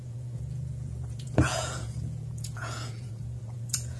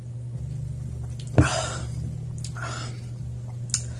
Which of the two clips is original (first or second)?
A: second